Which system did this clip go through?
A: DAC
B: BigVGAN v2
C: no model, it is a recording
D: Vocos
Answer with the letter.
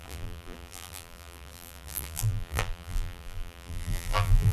B